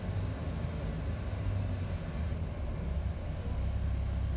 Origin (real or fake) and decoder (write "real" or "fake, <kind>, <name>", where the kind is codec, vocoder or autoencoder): real